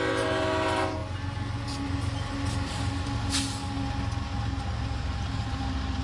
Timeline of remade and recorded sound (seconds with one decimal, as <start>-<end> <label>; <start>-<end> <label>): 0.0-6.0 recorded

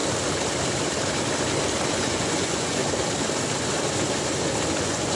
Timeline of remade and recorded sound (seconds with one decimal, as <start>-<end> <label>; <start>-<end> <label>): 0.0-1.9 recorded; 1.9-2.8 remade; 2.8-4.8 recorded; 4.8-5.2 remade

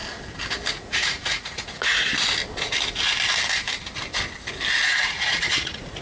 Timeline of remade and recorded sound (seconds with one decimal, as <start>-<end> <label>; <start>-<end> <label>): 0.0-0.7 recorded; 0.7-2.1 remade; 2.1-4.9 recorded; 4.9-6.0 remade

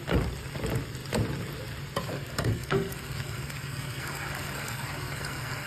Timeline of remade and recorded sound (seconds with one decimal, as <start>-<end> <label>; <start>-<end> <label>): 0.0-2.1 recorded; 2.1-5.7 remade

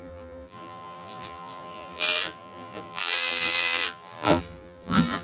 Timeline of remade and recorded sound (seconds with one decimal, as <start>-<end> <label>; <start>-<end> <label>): 0.0-5.2 remade

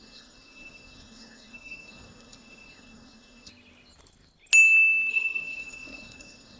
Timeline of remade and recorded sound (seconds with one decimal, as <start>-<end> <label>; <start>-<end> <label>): 0.0-3.5 remade; 3.5-5.1 recorded; 5.1-6.6 remade

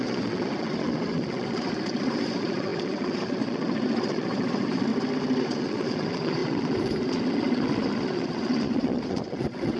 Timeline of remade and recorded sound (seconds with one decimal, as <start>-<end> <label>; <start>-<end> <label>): 0.0-4.9 remade; 4.9-5.4 recorded; 5.4-9.8 remade

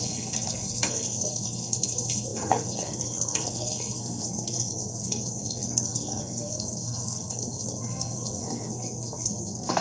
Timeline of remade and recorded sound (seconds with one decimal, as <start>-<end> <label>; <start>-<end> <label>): 0.0-9.8 remade